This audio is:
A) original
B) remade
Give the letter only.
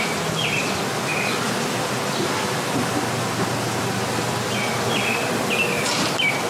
A